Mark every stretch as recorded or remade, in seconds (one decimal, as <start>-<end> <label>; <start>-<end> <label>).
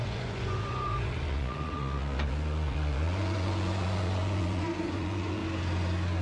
0.0-5.4 remade; 5.4-6.2 recorded